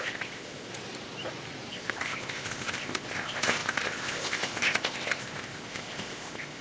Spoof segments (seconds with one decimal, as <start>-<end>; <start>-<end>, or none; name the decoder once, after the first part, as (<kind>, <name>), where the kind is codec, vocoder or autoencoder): 0.0-0.7 (codec, ZipCodec); 1.7-6.6